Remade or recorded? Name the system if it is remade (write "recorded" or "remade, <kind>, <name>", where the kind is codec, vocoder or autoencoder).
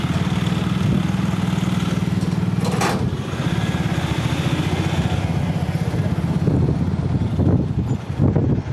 recorded